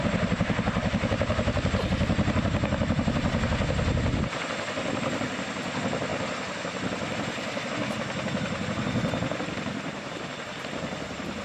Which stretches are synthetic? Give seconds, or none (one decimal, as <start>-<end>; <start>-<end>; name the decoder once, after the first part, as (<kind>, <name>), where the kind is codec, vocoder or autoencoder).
none